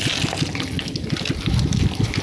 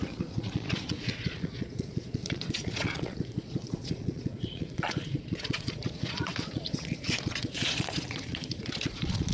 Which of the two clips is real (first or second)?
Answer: first